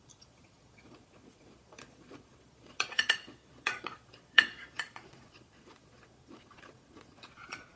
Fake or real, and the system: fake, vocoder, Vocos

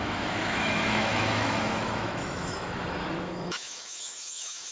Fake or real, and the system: fake, autoencoder, DAC-VAE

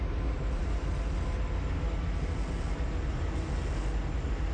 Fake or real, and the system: real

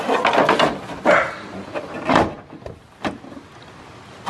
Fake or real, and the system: real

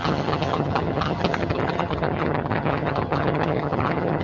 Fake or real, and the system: fake, vocoder, HiFi-GAN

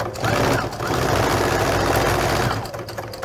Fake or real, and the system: real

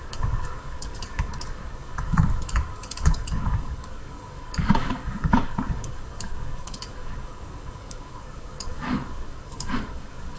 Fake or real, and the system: fake, codec, DAC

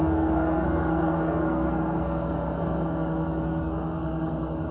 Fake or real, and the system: fake, codec, SNAC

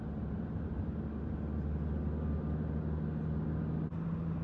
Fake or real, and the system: real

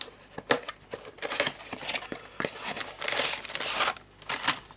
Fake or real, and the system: real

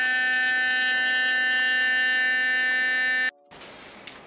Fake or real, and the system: real